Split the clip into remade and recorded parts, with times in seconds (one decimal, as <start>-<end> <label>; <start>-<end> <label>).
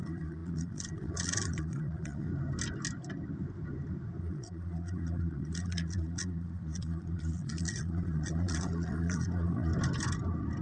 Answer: 0.0-2.3 remade; 2.3-4.2 recorded; 4.2-9.7 remade; 9.7-10.6 recorded